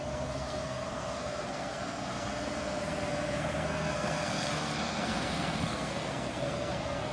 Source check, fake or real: fake